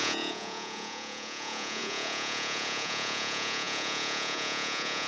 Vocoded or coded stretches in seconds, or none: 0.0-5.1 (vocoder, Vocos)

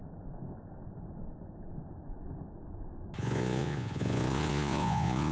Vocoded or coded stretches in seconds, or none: 3.2-5.3 (vocoder, Vocos)

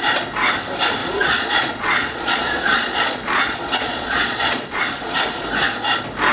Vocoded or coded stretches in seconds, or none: 1.0-4.8 (vocoder, Vocos)